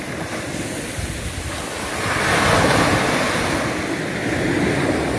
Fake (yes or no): no